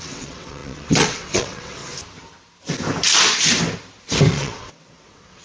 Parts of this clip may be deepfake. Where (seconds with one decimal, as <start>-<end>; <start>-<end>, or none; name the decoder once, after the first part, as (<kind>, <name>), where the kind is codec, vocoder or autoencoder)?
0.0-1.8 (vocoder, WaveNeXt); 4.3-5.4